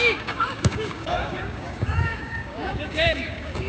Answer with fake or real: fake